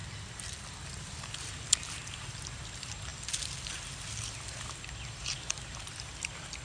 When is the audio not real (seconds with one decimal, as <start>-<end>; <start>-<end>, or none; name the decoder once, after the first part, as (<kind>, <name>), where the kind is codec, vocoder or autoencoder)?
none